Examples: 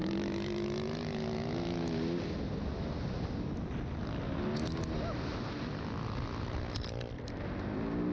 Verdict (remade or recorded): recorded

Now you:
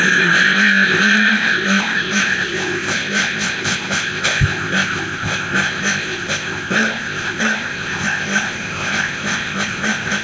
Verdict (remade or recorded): remade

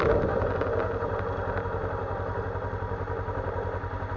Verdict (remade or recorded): recorded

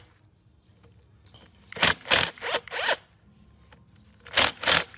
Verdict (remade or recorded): recorded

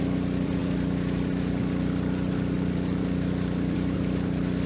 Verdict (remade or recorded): recorded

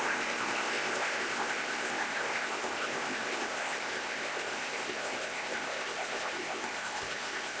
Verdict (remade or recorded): remade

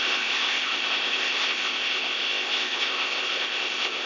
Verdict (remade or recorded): remade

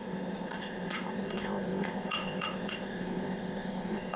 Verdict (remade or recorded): remade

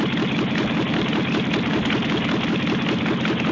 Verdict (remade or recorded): recorded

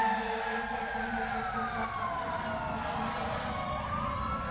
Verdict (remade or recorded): recorded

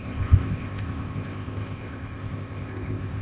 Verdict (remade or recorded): remade